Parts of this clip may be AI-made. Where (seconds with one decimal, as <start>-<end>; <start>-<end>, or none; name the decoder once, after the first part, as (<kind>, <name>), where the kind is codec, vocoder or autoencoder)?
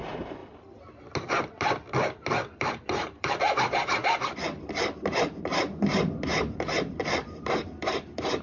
0.0-0.4 (vocoder, BigVGAN v2); 2.7-4.0; 5.0-8.4